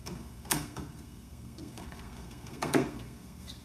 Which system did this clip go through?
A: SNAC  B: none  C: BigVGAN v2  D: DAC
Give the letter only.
A